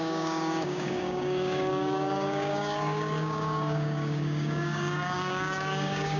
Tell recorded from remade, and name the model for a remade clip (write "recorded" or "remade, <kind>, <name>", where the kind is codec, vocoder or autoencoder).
remade, codec, DAC